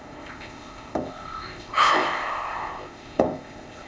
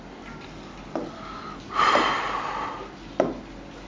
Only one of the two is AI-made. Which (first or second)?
first